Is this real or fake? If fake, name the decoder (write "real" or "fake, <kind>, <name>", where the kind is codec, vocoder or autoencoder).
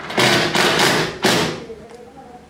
real